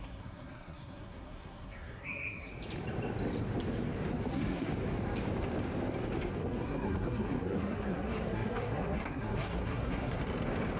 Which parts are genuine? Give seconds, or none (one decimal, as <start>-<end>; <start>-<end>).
2.5-4.3; 4.7-6.4; 10.2-10.8